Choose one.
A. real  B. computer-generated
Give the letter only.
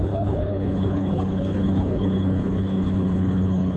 B